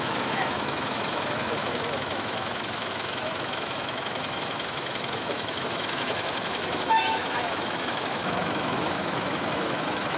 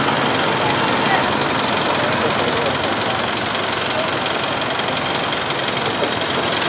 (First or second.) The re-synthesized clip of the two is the first